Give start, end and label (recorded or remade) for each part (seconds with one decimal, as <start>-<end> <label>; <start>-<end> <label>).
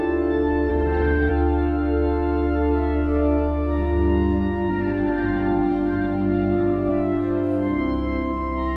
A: 0.0-0.7 recorded; 0.7-1.3 remade; 1.3-4.7 recorded; 4.7-6.9 remade; 6.9-8.8 recorded